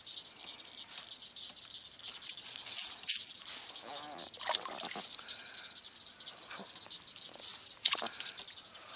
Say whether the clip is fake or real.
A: real